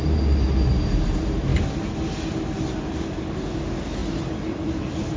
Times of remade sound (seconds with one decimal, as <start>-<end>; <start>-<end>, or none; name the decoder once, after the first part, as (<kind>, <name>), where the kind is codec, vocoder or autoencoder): none